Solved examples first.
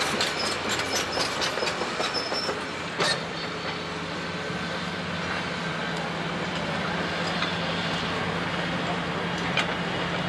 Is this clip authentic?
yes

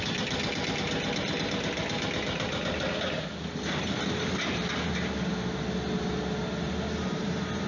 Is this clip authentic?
yes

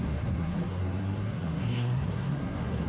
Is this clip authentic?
no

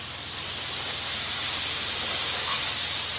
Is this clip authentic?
yes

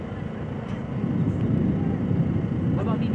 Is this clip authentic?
yes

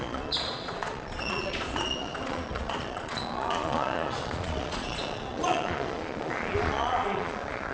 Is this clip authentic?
no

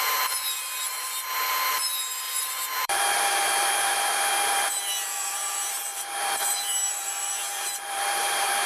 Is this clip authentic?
no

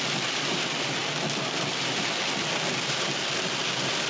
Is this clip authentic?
yes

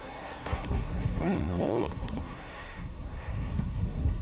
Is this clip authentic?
no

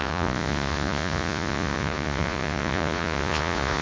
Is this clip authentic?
no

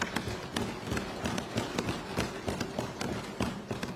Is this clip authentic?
yes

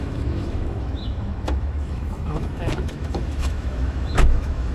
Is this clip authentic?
no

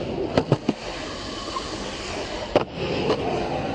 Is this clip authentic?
yes